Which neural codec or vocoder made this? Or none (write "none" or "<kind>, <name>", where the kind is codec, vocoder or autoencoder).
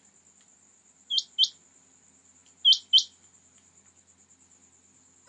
none